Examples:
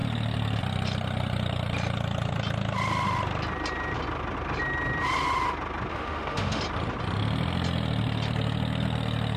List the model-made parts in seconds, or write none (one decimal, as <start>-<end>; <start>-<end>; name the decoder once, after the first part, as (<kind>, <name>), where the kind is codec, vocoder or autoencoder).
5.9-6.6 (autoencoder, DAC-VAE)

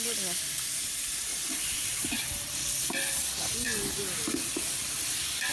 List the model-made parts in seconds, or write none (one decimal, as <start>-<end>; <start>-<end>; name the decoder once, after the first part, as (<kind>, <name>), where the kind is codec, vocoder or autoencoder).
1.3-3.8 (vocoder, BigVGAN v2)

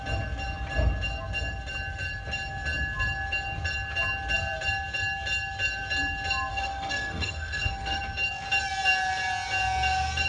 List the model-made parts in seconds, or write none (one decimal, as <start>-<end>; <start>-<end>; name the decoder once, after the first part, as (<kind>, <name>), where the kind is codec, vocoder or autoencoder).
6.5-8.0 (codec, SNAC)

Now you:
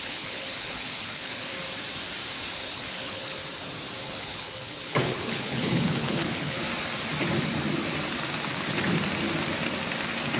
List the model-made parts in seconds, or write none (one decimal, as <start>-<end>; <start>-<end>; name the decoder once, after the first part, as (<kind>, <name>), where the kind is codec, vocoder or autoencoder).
0.0-1.5 (codec, HILCodec); 2.5-3.4; 4.0-6.6

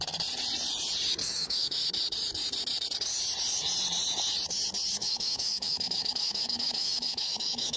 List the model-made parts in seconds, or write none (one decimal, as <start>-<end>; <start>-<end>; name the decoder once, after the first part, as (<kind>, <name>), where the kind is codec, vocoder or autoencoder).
1.2-1.8 (autoencoder, DAC-VAE); 5.0-7.8

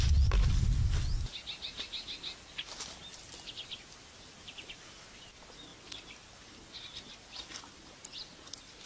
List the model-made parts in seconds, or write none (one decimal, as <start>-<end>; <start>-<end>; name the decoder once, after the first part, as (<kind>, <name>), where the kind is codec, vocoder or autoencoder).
none

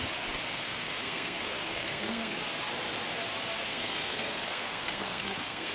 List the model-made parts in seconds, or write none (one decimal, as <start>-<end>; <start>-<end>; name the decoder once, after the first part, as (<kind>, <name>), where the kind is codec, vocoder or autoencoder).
0.5-2.4 (codec, SNAC); 3.6-5.7

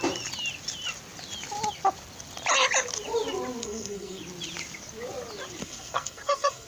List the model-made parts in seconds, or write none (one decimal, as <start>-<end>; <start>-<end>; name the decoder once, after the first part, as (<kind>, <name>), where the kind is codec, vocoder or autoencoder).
3.6-4.2 (codec, SNAC); 5.6-6.7